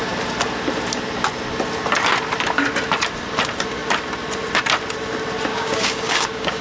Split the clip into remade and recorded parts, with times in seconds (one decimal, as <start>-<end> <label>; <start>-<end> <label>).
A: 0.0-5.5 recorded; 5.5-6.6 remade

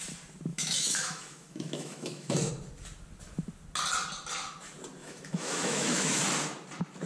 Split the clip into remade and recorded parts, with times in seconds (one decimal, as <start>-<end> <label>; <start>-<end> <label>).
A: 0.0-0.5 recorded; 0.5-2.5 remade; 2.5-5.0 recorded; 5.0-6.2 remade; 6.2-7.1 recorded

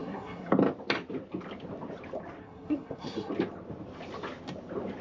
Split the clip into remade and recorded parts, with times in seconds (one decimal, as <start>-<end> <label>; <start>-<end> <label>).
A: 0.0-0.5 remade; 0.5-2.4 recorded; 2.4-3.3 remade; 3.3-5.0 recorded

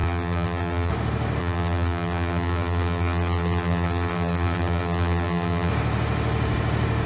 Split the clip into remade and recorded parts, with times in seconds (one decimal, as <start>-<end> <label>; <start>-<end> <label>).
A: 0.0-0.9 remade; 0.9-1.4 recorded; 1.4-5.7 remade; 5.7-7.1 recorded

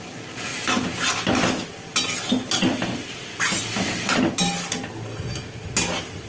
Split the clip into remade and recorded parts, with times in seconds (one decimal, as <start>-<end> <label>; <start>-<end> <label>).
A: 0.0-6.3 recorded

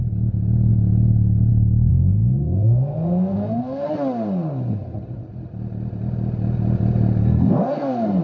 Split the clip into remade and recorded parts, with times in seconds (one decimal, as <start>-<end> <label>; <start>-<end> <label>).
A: 0.0-1.9 recorded; 1.9-3.9 remade; 3.9-7.2 recorded; 7.2-8.2 remade

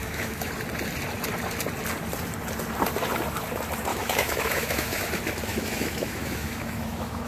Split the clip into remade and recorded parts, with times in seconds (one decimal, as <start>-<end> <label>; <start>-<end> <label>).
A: 0.0-0.5 remade; 0.5-3.9 recorded; 3.9-5.1 remade; 5.1-5.5 recorded; 5.5-7.3 remade

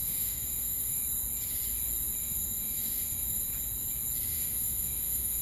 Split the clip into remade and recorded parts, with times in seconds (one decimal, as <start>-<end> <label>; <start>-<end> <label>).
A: 0.0-1.0 remade; 1.0-2.2 recorded; 2.2-3.4 remade; 3.4-4.3 recorded; 4.3-5.4 remade